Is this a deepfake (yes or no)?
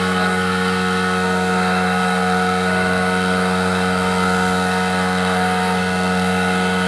yes